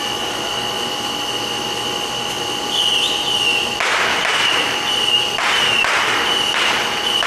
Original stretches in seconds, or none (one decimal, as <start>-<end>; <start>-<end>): 0.0-4.3; 5.7-7.3